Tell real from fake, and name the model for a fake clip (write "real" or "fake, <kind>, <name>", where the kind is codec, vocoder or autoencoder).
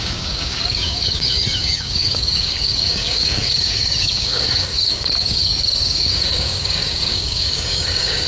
fake, codec, DAC